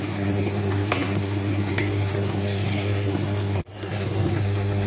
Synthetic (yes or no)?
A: yes